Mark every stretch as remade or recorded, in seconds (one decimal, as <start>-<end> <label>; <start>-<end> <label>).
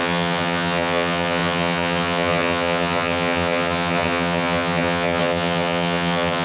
0.0-6.4 remade